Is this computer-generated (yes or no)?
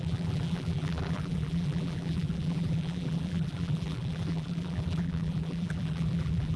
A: yes